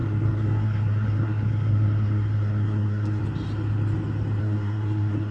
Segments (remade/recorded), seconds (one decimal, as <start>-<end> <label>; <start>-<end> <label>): 0.0-3.2 remade; 3.2-4.4 recorded; 4.4-5.3 remade